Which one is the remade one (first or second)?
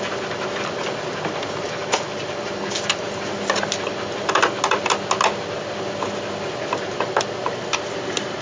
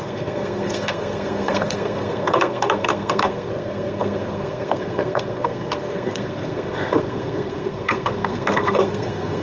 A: second